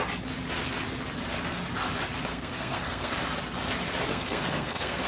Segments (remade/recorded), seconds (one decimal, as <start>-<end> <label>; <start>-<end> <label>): 0.0-2.3 recorded; 2.3-3.1 remade; 3.1-4.1 recorded; 4.1-5.1 remade